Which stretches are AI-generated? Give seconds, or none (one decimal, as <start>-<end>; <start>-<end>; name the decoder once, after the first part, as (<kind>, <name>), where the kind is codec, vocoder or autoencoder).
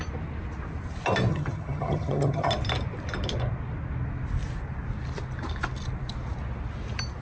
1.3-2.5 (vocoder, HiFi-GAN)